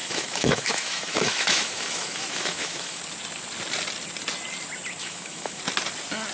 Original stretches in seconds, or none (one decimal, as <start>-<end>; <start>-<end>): 3.0-5.0; 5.6-6.3